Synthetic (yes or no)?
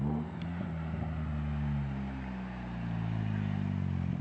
no